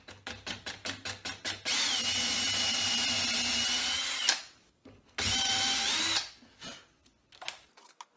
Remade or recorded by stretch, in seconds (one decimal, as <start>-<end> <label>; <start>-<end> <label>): 0.0-2.7 recorded; 2.7-6.0 remade; 6.0-8.2 recorded